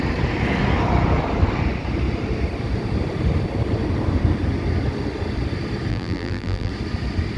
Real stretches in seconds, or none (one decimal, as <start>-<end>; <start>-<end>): 0.0-5.9; 6.7-7.4